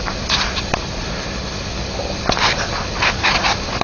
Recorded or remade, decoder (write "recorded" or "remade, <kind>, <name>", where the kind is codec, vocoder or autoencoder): recorded